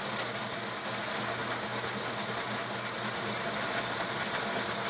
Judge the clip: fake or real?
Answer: real